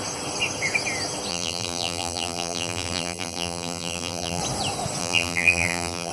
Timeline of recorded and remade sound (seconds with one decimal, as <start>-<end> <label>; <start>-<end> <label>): 0.0-1.3 recorded; 1.3-4.4 remade; 4.4-5.0 recorded; 5.0-6.1 remade